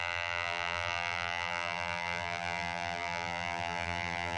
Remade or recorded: remade